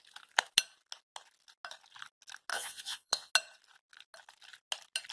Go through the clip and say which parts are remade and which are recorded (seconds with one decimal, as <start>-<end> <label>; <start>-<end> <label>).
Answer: 0.0-2.5 recorded; 2.5-3.3 remade; 3.3-5.1 recorded